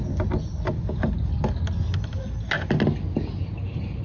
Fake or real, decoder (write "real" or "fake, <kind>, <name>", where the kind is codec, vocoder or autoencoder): real